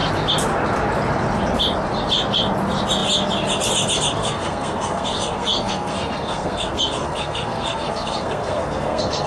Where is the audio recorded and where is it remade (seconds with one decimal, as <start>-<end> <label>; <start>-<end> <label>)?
0.0-4.2 recorded; 4.2-9.3 remade

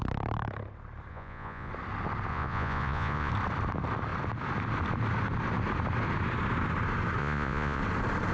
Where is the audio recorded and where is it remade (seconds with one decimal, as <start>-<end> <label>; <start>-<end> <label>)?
0.0-1.1 recorded; 1.1-1.7 remade; 1.7-2.3 recorded; 2.3-3.3 remade; 3.3-7.2 recorded; 7.2-7.8 remade; 7.8-8.3 recorded

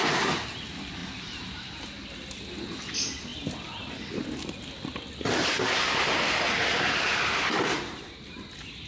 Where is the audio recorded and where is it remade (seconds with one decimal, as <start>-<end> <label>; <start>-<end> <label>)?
0.0-1.0 recorded; 1.0-1.8 remade; 1.8-7.7 recorded; 7.7-8.5 remade; 8.5-8.9 recorded